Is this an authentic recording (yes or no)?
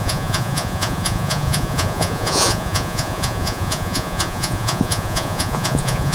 no